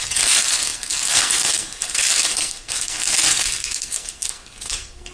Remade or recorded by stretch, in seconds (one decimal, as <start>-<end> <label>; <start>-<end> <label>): 0.0-5.1 remade